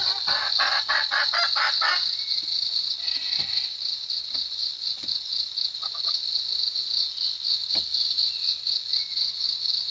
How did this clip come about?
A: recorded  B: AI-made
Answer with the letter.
A